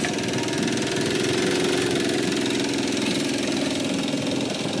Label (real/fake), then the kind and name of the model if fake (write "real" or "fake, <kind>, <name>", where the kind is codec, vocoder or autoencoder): real